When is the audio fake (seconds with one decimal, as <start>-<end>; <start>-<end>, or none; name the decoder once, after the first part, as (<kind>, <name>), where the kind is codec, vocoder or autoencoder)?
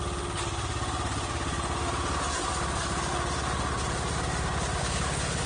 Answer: 4.8-5.5 (codec, HILCodec)